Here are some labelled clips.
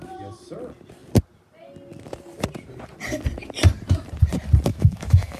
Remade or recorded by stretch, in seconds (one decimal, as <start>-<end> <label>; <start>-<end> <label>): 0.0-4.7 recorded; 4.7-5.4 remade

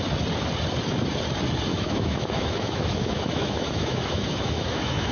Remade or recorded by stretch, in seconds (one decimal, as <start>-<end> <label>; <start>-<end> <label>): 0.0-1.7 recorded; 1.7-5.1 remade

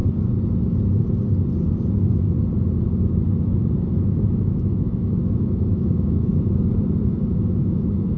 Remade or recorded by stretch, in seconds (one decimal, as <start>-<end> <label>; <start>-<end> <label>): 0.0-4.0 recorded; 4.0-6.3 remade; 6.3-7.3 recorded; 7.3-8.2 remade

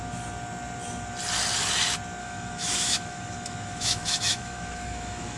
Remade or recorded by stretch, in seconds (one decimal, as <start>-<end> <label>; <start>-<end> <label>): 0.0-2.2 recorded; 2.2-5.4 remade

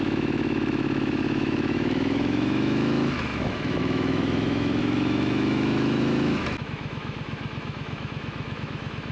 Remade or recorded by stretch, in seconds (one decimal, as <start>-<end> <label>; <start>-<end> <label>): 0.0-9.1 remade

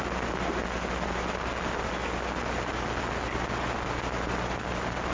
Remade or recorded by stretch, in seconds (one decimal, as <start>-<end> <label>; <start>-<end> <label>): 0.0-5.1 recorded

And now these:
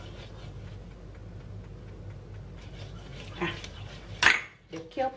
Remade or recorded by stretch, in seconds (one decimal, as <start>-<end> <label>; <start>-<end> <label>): 0.0-5.2 recorded

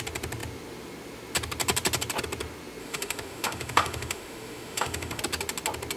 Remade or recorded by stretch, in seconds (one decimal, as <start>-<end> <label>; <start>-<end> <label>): 0.0-2.8 recorded; 2.8-5.2 remade; 5.2-6.0 recorded